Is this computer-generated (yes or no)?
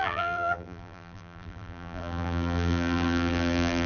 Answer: yes